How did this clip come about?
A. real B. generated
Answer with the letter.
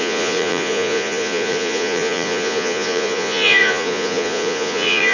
B